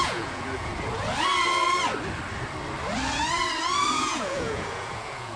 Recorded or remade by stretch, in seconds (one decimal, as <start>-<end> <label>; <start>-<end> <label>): 0.0-0.7 remade; 0.7-3.9 recorded; 3.9-5.4 remade